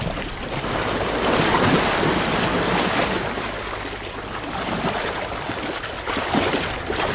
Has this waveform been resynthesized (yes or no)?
yes